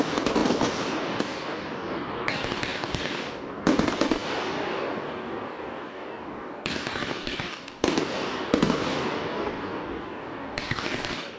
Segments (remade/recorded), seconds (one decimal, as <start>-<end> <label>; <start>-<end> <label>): 0.0-11.4 remade

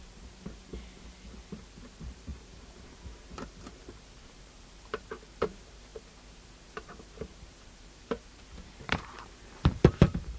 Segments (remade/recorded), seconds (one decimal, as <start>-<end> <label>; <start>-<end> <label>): 0.0-0.7 remade; 0.7-1.8 recorded; 1.8-10.4 remade

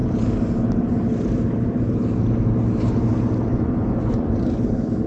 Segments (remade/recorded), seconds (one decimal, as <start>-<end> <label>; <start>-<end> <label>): 0.0-3.5 recorded; 3.5-4.6 remade; 4.6-5.1 recorded

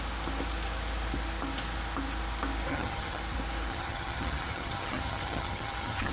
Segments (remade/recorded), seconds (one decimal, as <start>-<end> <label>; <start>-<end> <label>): 0.0-2.7 recorded; 2.7-3.2 remade; 3.2-3.7 recorded; 3.7-6.1 remade

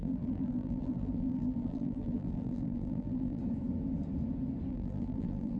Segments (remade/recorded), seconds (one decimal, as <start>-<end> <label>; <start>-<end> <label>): 0.0-3.4 remade; 3.4-4.7 recorded; 4.7-5.6 remade